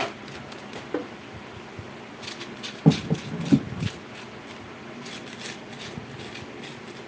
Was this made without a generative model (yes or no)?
yes